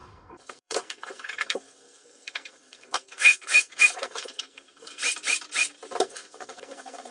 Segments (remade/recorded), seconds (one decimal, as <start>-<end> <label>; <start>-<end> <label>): 0.0-5.0 remade; 5.0-6.0 recorded; 6.0-7.1 remade